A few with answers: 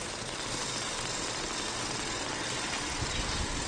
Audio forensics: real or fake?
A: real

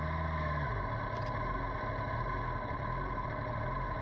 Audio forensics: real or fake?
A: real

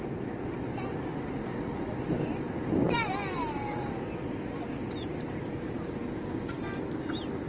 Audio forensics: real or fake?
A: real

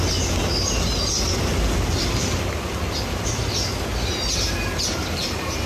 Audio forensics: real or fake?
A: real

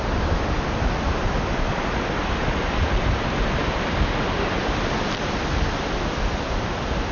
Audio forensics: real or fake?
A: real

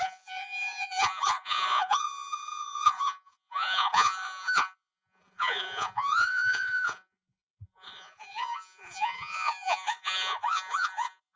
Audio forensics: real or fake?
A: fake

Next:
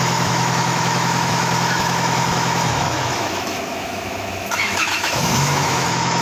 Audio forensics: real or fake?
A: fake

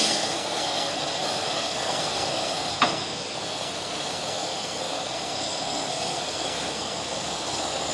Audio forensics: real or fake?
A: fake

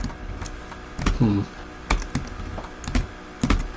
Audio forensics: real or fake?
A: real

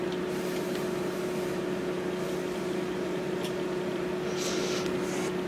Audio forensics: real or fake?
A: real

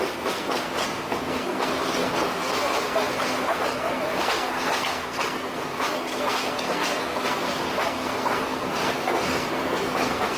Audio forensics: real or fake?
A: fake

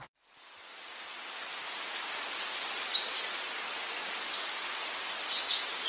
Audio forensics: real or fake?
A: real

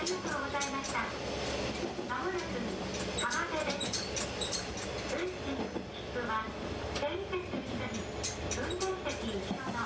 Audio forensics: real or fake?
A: real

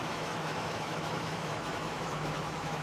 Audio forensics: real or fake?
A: fake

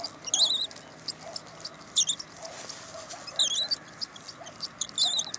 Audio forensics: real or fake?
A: real